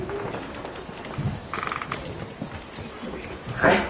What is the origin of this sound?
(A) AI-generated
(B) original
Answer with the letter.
B